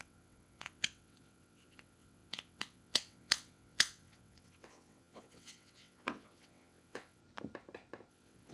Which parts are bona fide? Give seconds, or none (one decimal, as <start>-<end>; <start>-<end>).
7.2-8.1